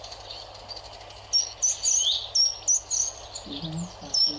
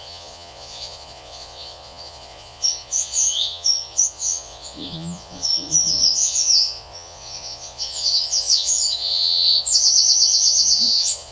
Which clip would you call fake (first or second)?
second